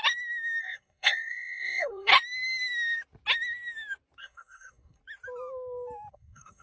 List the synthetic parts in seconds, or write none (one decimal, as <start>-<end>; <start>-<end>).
0.6-2.1; 4.2-5.0; 6.1-6.6